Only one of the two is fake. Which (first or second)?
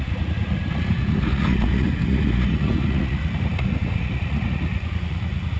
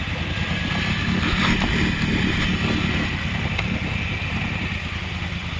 first